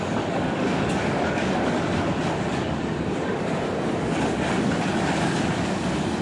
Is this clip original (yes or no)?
no